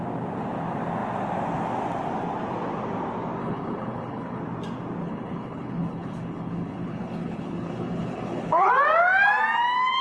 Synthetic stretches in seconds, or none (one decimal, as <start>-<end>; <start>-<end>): 3.4-4.4; 5.0-8.7